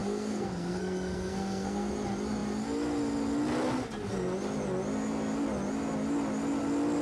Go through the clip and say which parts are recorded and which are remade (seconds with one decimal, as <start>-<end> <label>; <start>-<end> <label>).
0.0-1.9 remade; 1.9-7.0 recorded